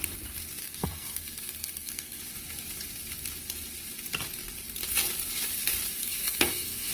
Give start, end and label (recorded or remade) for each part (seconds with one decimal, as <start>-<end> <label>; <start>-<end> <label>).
0.0-0.6 recorded; 0.6-2.2 remade; 2.2-6.0 recorded; 6.0-6.9 remade